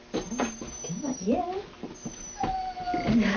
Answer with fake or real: real